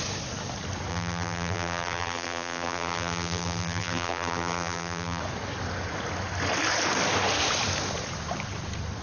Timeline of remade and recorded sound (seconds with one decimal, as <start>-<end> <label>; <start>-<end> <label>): 0.0-0.9 recorded; 0.9-5.2 remade; 5.2-9.0 recorded